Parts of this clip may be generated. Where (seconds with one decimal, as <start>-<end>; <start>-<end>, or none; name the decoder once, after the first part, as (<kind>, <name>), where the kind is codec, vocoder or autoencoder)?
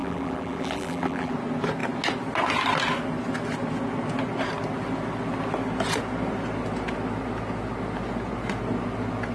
0.0-1.3 (vocoder, BigVGAN v2)